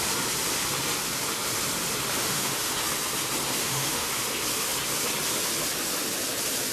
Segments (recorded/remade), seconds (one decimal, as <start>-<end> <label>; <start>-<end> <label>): 0.0-2.2 recorded; 2.2-2.7 remade; 2.7-3.6 recorded; 3.6-4.1 remade; 4.1-6.7 recorded